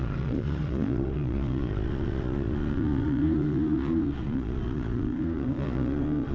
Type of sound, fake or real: fake